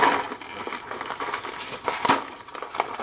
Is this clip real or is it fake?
real